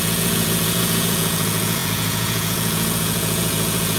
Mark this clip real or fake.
fake